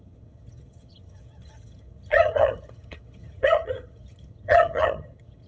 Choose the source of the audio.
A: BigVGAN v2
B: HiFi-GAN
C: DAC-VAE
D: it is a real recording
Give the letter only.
B